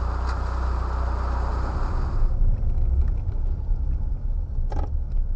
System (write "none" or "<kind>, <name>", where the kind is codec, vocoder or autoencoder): none